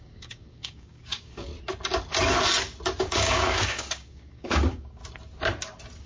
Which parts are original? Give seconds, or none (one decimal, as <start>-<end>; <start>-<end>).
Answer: 1.5-3.0; 5.0-6.1